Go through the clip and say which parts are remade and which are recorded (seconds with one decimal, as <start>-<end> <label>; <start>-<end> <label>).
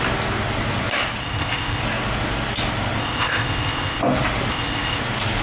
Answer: 0.0-1.2 recorded; 1.2-1.8 remade; 1.8-3.0 recorded; 3.0-4.0 remade; 4.0-4.5 recorded; 4.5-5.0 remade; 5.0-5.4 recorded